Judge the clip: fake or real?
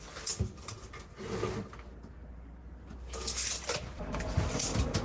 real